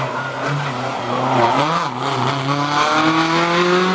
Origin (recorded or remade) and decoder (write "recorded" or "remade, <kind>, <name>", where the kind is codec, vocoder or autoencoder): recorded